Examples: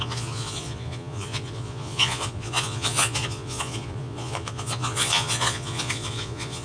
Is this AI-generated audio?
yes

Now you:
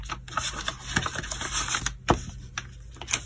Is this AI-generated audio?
no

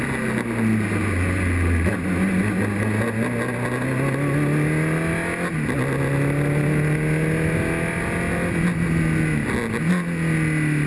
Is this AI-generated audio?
no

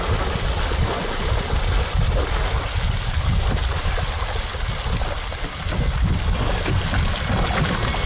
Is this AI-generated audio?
no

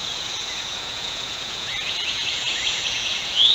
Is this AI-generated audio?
yes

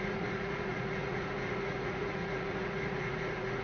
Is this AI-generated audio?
yes